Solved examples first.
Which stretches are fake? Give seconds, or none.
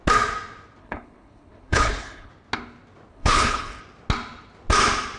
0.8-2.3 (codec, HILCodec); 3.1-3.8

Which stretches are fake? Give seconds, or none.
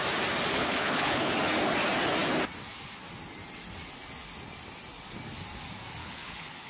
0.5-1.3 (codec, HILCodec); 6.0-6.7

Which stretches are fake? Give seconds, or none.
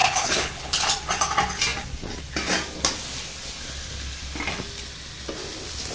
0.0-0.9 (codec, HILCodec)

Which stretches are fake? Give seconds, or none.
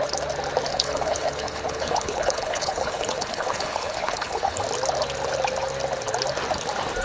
0.7-4.6 (codec, HILCodec)